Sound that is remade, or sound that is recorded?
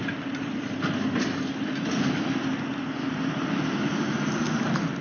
recorded